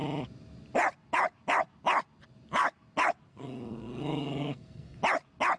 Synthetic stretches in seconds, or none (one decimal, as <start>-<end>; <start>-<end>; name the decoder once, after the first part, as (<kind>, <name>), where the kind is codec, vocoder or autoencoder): 3.3-5.0 (codec, SNAC)